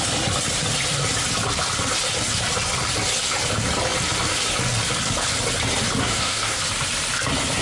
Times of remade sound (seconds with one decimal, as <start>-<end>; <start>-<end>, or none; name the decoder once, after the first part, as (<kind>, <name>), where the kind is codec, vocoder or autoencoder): 6.0-6.6 (codec, SNAC)